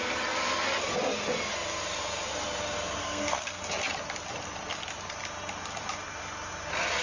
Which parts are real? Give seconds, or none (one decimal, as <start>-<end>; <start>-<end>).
0.0-3.0; 3.6-7.0